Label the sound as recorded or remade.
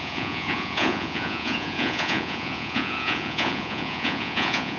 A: remade